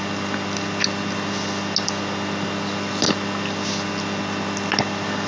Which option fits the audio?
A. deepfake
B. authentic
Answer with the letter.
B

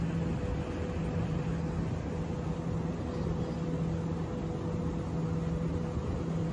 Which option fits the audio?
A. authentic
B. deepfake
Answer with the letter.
A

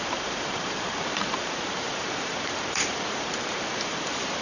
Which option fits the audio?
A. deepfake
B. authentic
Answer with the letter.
A